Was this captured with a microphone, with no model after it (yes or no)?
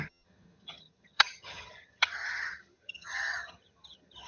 no